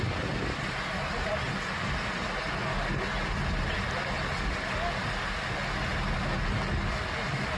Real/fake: real